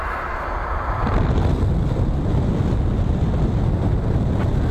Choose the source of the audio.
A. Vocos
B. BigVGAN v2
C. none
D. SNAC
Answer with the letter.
C